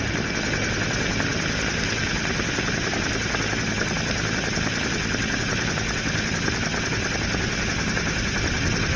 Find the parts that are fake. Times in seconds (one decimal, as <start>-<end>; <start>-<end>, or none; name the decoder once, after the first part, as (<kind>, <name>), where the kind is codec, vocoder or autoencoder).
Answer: none